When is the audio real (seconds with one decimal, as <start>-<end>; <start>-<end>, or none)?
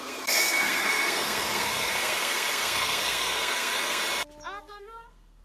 4.0-4.6